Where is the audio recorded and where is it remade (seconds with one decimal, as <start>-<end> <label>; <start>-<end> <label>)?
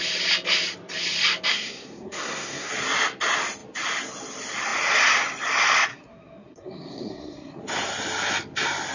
0.0-1.5 recorded; 1.5-2.7 remade; 2.7-5.9 recorded; 5.9-7.6 remade; 7.6-8.9 recorded